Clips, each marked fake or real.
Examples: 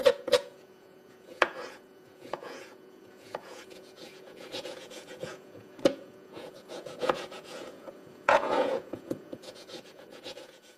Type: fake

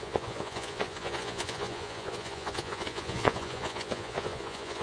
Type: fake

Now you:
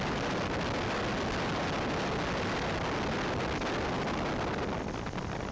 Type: real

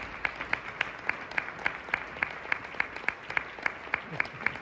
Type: real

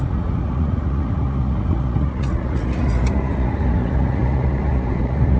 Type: fake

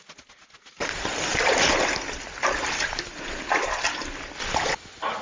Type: real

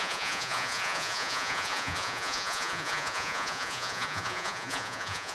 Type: fake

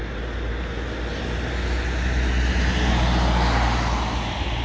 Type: real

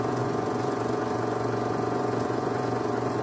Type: fake